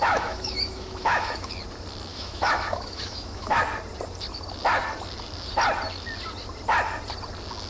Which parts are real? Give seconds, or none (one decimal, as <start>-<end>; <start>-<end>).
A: 1.5-2.1; 3.6-7.7